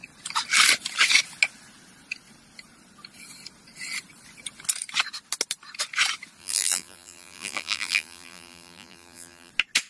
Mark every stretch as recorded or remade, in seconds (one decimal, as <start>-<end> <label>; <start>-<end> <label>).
0.0-6.4 recorded; 6.4-9.5 remade; 9.5-9.9 recorded